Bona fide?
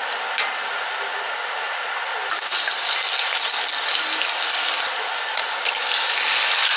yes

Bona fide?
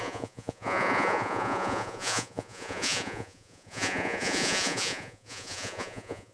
no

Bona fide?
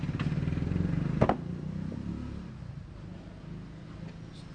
yes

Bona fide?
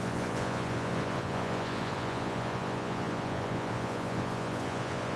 no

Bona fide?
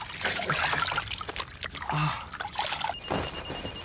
yes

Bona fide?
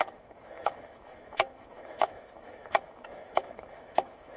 no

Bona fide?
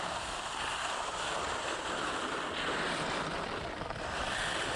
yes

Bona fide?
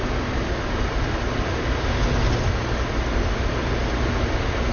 yes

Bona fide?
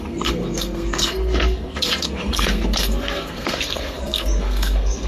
no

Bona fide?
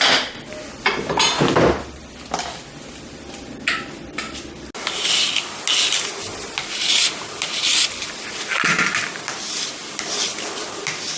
yes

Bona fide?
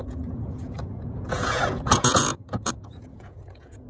no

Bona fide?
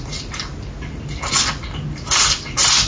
yes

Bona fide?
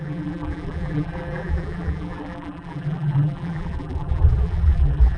no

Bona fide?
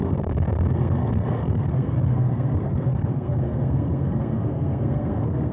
no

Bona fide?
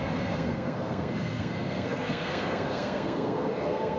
no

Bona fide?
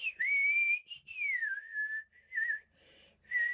no